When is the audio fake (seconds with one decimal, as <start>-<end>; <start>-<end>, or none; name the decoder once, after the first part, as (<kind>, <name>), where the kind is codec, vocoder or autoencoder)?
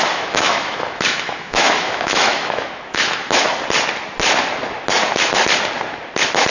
0.0-3.2 (autoencoder, DAC-VAE)